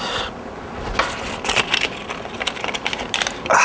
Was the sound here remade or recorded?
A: recorded